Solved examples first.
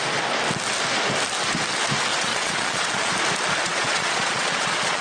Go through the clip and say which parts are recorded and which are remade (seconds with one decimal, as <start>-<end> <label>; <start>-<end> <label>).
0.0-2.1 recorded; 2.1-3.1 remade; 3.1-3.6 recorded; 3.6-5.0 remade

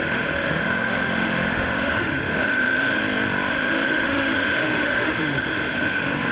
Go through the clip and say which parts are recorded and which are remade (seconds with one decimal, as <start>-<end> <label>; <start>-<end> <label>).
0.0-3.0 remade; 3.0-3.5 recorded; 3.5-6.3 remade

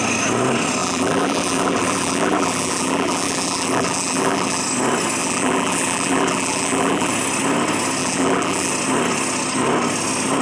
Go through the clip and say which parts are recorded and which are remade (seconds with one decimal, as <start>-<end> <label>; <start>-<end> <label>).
0.0-0.8 recorded; 0.8-4.6 remade; 4.6-5.2 recorded; 5.2-7.1 remade; 7.1-8.0 recorded; 8.0-8.7 remade; 8.7-10.4 recorded

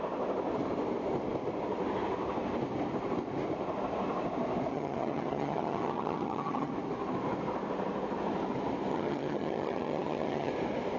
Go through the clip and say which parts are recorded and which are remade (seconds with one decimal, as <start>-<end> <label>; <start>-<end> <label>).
0.0-4.7 recorded; 4.7-6.7 remade; 6.7-8.9 recorded; 8.9-10.5 remade; 10.5-11.0 recorded

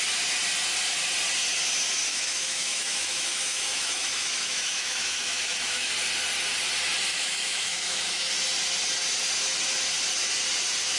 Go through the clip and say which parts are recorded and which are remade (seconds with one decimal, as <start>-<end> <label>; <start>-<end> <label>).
0.0-2.1 recorded; 2.1-5.9 remade; 5.9-7.1 recorded; 7.1-8.3 remade; 8.3-11.0 recorded

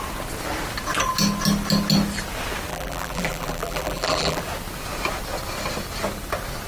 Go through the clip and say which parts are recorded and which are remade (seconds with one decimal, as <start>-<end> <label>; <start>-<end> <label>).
0.0-2.7 recorded; 2.7-4.4 remade; 4.4-6.7 recorded